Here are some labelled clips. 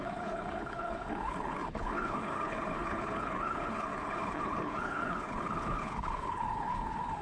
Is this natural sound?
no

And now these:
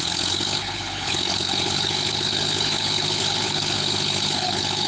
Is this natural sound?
no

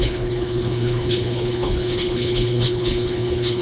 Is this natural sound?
no